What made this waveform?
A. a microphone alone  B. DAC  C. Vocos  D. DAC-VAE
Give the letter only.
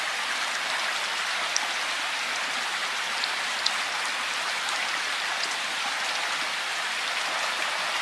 A